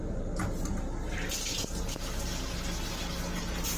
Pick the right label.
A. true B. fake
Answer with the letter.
A